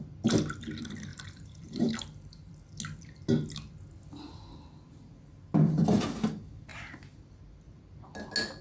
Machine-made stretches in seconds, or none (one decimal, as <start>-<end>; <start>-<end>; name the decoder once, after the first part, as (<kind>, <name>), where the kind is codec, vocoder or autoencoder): 1.1-2.5 (vocoder, BigVGAN v2); 6.7-7.4